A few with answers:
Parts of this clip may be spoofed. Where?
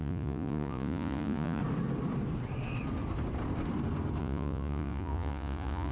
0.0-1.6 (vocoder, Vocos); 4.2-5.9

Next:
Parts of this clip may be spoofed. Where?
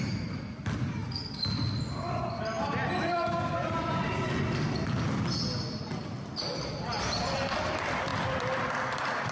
none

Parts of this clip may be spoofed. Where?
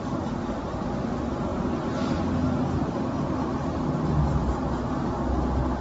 none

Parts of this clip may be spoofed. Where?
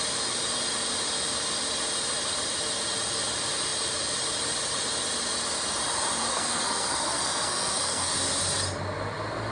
6.3-8.1 (codec, SNAC)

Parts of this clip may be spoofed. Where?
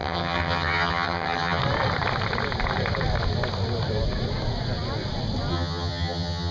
0.0-1.6 (vocoder, HiFi-GAN); 5.5-6.5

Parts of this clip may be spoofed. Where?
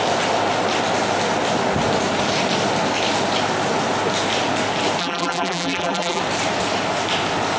5.0-6.2 (vocoder, BigVGAN v2)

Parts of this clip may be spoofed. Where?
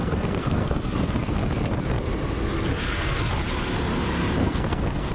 0.0-1.4 (codec, SNAC); 2.7-3.3; 4.4-5.1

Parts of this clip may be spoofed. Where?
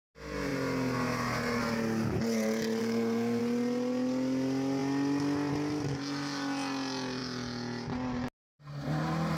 2.8-3.4 (codec, SNAC)